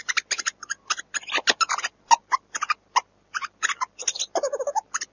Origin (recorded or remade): recorded